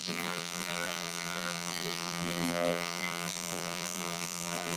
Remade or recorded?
remade